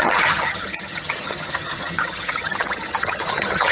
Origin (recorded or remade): remade